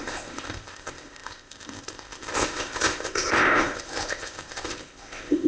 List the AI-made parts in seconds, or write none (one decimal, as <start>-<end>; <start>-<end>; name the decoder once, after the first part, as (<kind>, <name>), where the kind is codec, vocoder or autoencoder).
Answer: 0.0-5.5 (codec, ZipCodec)

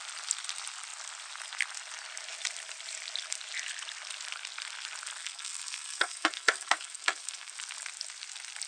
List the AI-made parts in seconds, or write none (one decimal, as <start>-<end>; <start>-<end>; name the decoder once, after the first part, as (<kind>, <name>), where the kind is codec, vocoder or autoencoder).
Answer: 5.2-7.5 (codec, SNAC)

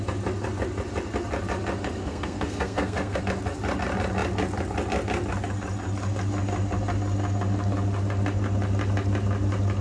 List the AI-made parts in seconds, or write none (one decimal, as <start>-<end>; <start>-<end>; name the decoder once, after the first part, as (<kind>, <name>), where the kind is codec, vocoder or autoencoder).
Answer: 2.0-3.2 (codec, SNAC)

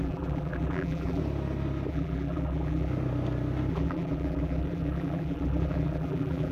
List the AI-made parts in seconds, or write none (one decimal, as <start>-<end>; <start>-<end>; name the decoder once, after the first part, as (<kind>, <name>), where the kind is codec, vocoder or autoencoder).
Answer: 0.0-1.2 (vocoder, BigVGAN v2); 1.9-2.9; 3.7-6.5

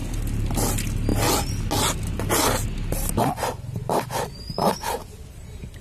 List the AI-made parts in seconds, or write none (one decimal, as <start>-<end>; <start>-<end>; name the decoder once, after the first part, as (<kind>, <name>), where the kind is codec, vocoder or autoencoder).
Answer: none

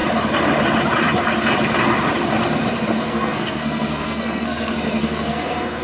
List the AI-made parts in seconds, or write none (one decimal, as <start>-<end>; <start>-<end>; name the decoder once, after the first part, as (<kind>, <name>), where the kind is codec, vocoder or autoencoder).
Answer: 3.0-5.8 (codec, SNAC)